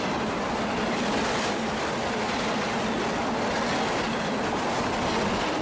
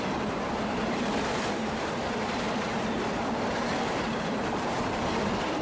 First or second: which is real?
first